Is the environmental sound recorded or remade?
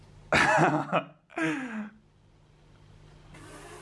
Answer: recorded